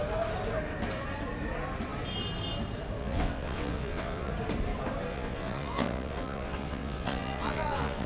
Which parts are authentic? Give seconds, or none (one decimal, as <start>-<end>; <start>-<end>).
0.0-3.0; 4.3-5.1

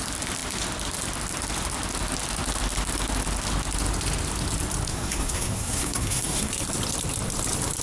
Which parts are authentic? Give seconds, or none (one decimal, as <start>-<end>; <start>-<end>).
0.0-4.9; 6.5-7.8

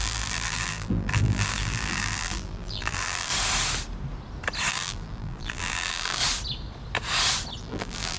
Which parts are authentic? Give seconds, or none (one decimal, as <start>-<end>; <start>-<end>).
3.3-4.7; 6.2-7.6